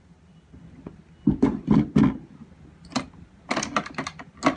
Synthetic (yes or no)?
no